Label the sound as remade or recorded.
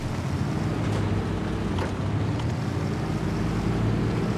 recorded